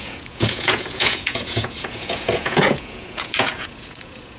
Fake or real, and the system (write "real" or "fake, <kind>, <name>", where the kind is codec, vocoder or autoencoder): fake, vocoder, Vocos